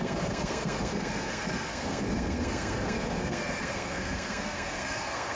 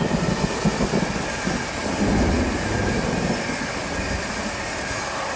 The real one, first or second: second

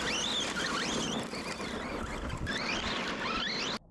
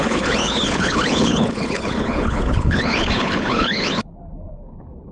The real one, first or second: first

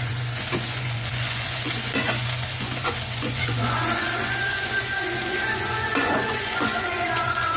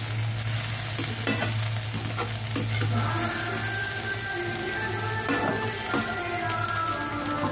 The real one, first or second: second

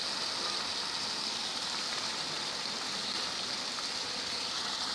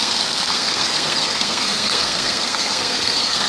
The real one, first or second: first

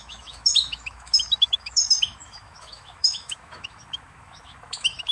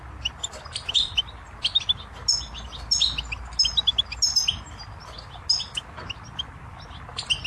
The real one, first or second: second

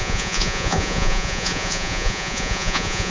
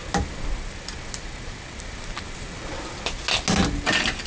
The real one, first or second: second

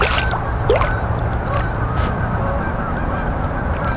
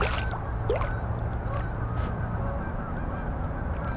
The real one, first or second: second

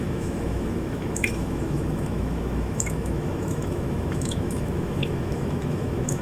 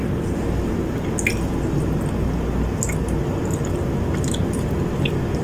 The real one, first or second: second